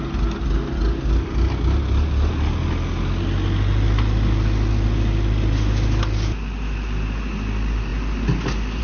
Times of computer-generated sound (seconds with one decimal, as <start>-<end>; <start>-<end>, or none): none